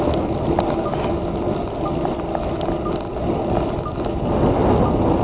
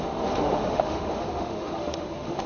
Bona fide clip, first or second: first